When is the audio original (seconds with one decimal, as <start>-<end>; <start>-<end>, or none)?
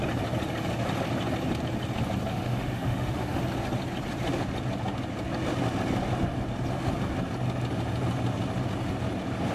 0.0-2.3; 3.4-9.5